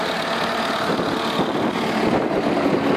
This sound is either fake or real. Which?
real